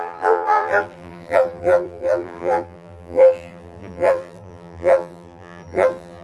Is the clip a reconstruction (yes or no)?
yes